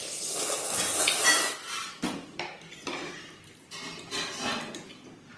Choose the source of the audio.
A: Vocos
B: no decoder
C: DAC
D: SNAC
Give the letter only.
B